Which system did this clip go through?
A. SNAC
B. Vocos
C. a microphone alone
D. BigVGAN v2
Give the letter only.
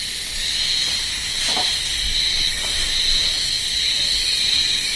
C